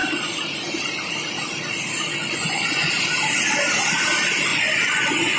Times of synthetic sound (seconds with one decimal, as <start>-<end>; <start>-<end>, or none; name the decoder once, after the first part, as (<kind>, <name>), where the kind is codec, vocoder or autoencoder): 2.2-2.9 (vocoder, Vocos); 4.5-5.4